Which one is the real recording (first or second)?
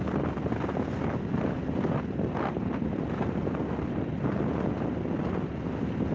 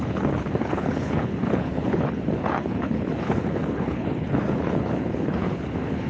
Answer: first